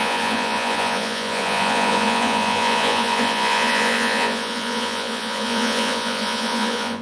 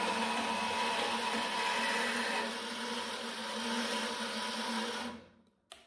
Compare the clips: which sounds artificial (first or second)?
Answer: first